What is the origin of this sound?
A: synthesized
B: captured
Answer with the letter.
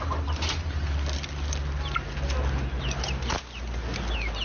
B